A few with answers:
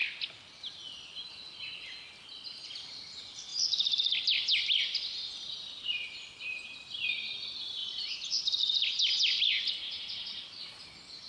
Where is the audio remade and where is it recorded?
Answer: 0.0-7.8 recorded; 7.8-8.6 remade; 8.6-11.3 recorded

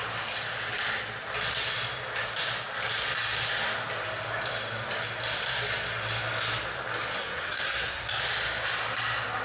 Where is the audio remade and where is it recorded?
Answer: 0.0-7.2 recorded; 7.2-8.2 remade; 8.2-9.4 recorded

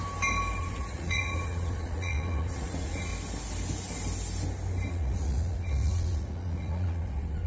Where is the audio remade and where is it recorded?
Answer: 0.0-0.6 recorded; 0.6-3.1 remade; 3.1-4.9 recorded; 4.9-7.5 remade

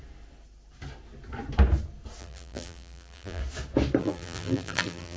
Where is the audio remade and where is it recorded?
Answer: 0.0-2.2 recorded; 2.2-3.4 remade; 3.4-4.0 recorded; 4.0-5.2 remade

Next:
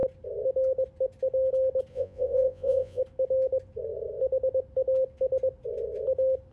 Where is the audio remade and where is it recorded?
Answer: 0.0-1.9 recorded; 1.9-3.0 remade; 3.0-6.5 recorded

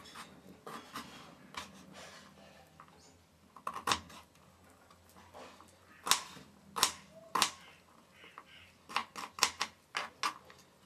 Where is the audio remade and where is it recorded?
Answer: 0.0-10.9 recorded

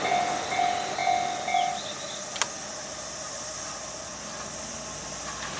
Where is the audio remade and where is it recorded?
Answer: 0.0-2.3 recorded; 2.3-5.6 remade